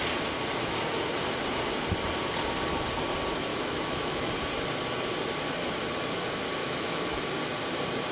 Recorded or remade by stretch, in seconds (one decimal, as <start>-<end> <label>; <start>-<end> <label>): 0.0-3.5 recorded; 3.5-4.3 remade; 4.3-6.6 recorded; 6.6-7.2 remade; 7.2-8.1 recorded